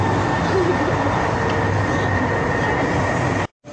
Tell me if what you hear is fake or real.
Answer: real